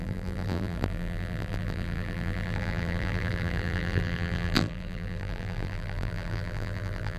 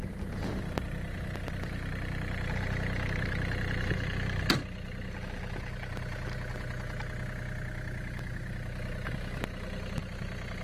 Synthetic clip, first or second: first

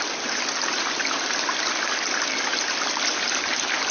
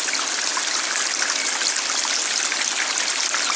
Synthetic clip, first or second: first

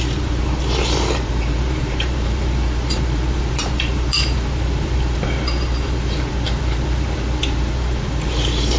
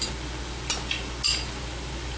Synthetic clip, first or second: first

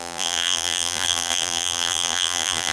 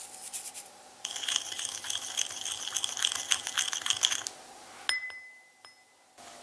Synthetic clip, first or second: first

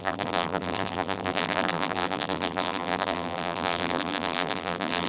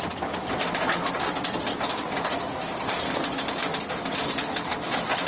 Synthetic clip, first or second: first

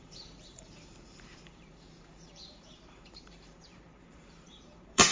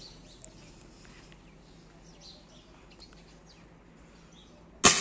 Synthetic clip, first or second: first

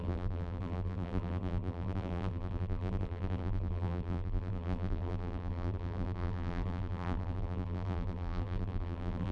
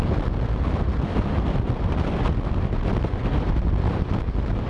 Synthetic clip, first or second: first